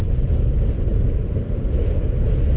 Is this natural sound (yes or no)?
yes